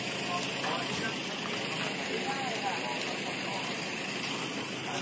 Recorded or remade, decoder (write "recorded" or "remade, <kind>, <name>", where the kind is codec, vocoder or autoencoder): recorded